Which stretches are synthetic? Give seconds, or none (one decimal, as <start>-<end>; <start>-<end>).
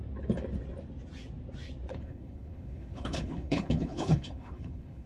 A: 1.9-5.1